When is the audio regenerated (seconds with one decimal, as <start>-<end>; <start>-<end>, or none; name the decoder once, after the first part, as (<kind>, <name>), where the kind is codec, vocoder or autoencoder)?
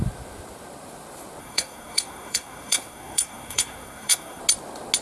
1.4-4.4 (codec, SNAC)